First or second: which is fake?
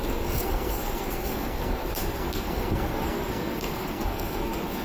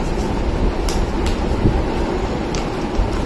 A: first